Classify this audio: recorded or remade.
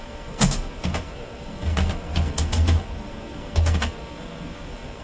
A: remade